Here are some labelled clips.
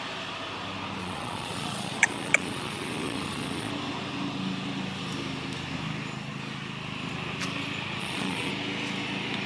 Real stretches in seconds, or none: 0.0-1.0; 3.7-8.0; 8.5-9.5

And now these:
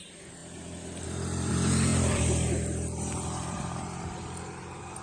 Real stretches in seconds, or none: 0.0-0.4; 1.5-1.9; 3.8-5.0

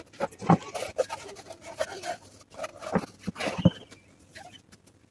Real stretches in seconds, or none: 0.0-5.1